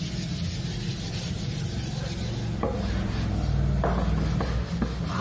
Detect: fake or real real